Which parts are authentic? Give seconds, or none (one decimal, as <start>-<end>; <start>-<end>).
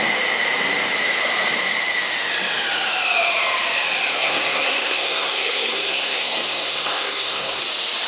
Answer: 0.0-4.1; 7.6-8.1